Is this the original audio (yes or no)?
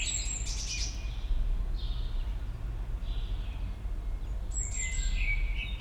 yes